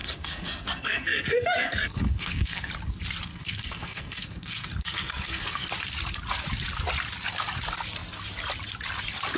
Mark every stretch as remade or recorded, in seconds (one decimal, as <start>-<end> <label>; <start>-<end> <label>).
0.0-2.7 remade; 2.7-3.3 recorded; 3.3-5.7 remade; 5.7-9.4 recorded